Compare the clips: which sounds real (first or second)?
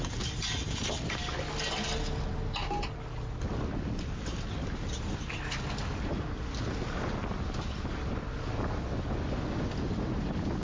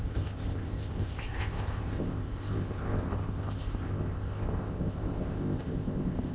first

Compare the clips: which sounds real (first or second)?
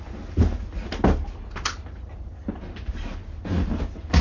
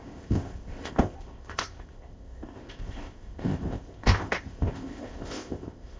first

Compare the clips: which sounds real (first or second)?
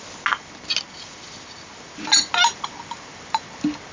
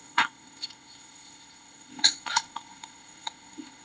first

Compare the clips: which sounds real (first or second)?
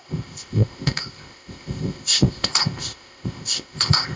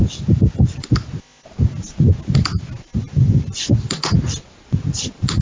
second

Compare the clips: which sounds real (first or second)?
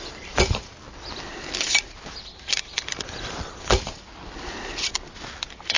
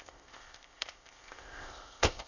first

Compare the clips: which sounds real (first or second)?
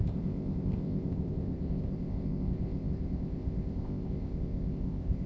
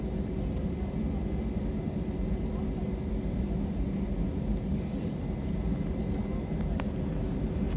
second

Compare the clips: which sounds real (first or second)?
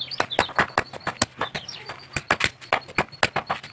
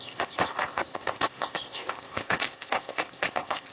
first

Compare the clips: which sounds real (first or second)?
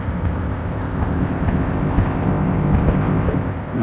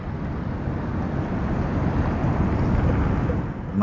second